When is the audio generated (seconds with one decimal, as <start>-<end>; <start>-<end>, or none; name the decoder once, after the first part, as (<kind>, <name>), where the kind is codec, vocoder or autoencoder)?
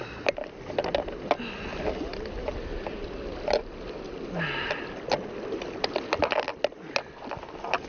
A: none